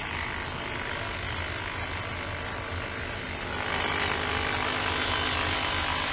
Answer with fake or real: real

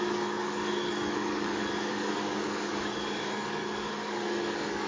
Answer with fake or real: fake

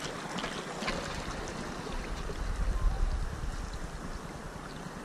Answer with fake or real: real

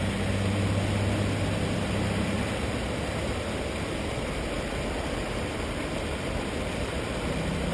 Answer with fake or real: real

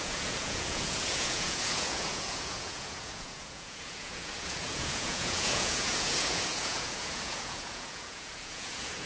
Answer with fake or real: fake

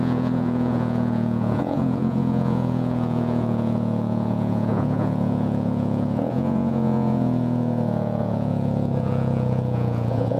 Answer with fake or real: fake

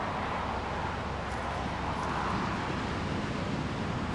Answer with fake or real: real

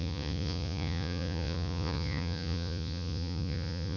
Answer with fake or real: fake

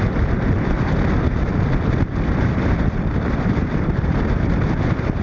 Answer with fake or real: fake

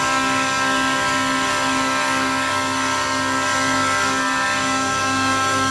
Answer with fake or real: fake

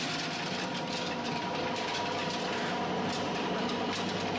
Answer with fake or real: real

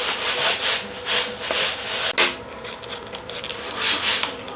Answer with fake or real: real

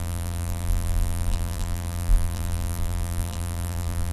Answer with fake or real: fake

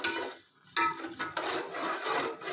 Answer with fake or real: real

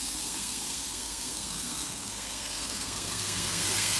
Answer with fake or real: fake